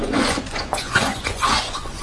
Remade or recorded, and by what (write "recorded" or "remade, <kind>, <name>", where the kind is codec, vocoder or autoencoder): remade, vocoder, Vocos